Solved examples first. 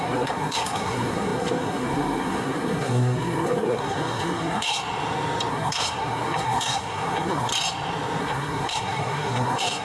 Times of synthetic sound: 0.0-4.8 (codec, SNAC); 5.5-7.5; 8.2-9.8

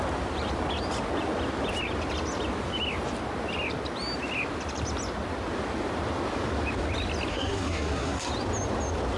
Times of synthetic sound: 7.3-8.3 (codec, SNAC)

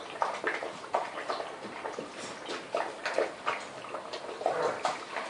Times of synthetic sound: none

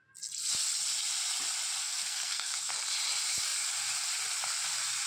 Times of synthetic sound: 1.8-2.7 (codec, SNAC)

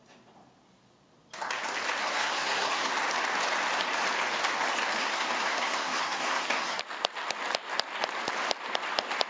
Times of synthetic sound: 2.0-2.9 (codec, SNAC); 5.0-6.8

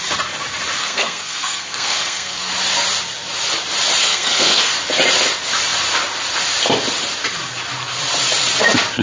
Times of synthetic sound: 0.8-2.5 (codec, SNAC); 4.0-4.7

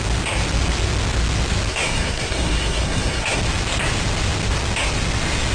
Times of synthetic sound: 1.7-3.4 (codec, SNAC)